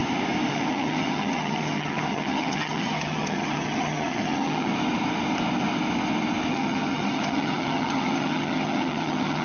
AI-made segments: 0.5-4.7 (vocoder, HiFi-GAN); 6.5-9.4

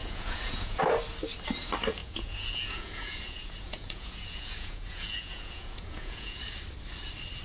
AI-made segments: 0.0-0.8 (vocoder, Vocos); 2.0-6.4

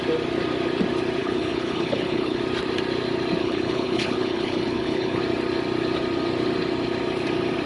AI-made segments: 1.2-2.4 (codec, HILCodec); 3.4-5.2

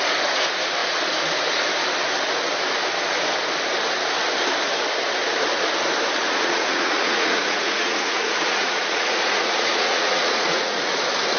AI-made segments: 6.2-10.9 (vocoder, Vocos)